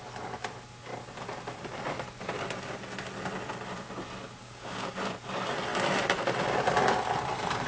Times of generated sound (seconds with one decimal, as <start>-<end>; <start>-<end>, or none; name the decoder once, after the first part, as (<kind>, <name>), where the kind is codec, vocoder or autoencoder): 4.4-5.0 (codec, DAC)